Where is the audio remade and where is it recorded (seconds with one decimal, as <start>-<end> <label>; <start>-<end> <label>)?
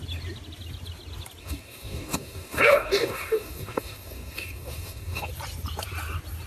0.0-1.4 recorded; 1.4-5.3 remade; 5.3-6.5 recorded